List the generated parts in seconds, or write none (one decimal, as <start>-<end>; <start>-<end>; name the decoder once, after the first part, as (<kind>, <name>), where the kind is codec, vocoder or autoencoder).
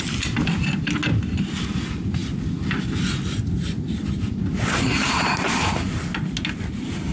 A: none